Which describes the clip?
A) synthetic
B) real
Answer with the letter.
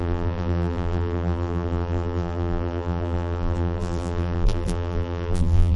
A